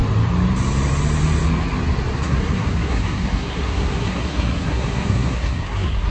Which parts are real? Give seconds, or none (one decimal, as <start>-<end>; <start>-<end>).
0.0-2.2